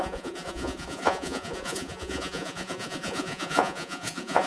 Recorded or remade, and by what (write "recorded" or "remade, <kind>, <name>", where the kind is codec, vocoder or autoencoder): remade, vocoder, Vocos